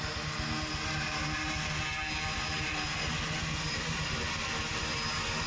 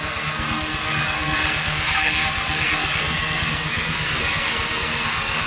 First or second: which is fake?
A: second